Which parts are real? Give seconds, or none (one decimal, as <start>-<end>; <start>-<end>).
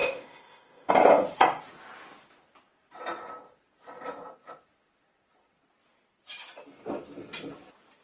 0.9-8.0